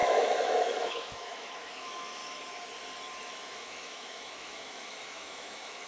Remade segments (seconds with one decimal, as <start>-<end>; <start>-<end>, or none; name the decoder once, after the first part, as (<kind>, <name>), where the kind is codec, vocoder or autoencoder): 0.0-2.2 (autoencoder, DAC-VAE); 3.3-5.9